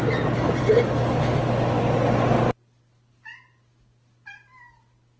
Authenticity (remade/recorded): recorded